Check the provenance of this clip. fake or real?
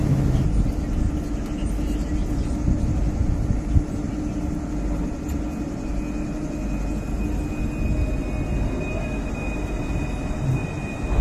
real